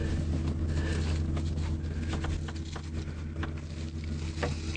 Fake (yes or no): no